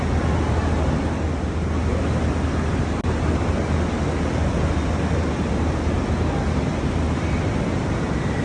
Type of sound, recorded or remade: recorded